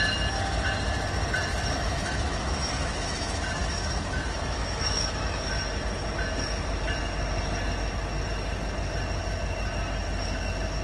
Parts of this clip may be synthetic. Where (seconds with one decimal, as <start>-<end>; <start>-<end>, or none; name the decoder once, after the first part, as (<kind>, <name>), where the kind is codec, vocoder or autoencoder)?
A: 1.5-5.5 (autoencoder, DAC-VAE)